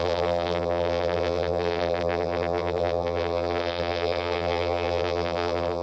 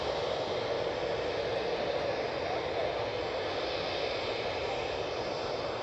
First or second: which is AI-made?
first